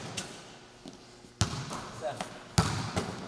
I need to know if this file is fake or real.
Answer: real